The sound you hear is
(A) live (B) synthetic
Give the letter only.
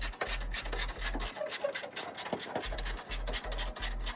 A